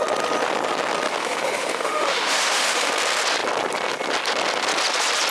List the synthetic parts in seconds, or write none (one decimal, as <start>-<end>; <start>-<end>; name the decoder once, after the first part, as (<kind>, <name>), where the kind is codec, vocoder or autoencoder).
1.2-2.9 (autoencoder, DAC-VAE)